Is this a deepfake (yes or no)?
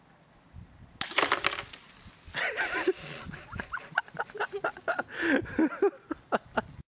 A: no